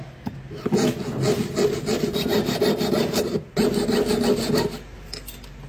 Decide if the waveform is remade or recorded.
recorded